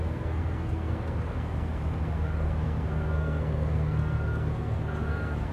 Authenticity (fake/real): fake